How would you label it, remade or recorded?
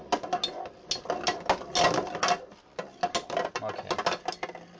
recorded